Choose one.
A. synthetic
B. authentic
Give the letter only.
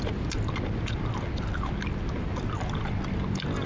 B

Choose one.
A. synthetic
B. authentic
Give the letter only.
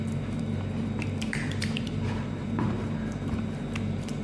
A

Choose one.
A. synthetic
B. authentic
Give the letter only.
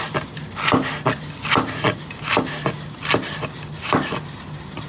B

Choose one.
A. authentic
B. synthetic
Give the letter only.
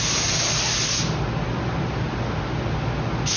A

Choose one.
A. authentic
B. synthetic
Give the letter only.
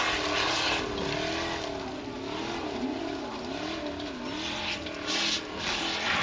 A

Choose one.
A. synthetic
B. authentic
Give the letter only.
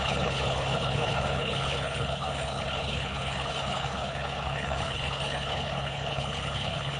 A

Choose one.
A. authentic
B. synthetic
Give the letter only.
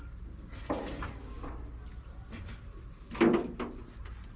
A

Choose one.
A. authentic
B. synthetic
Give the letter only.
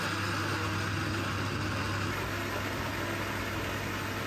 A